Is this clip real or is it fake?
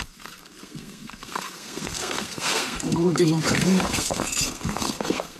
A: fake